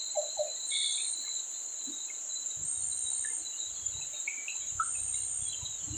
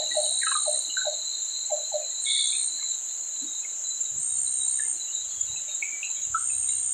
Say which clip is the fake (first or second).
first